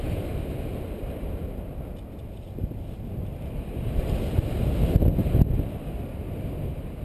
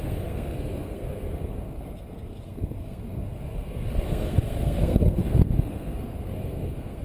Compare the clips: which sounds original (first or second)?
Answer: first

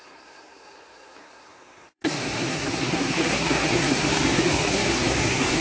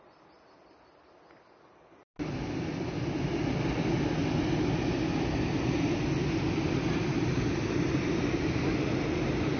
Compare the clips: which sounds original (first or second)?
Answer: second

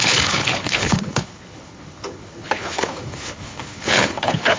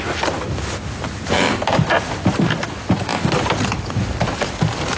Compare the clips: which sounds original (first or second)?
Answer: second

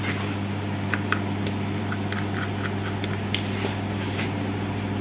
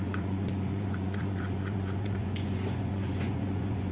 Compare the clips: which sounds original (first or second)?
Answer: first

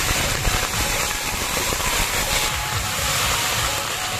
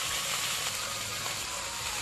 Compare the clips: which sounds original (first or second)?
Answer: second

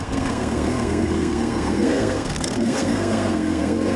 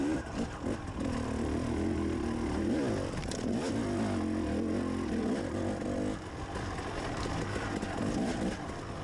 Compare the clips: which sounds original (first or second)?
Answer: second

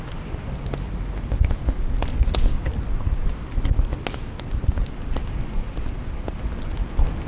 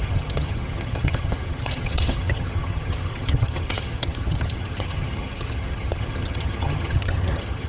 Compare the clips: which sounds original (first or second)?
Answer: first